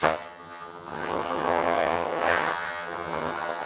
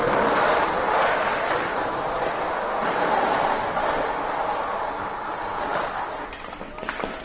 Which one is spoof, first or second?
first